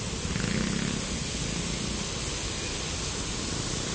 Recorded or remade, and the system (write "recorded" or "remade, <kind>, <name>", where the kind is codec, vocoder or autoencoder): recorded